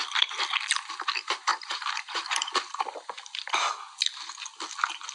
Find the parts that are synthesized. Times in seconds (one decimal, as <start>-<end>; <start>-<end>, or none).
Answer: 1.5-3.7